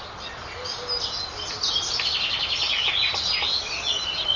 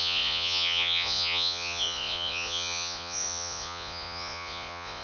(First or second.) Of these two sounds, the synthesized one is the second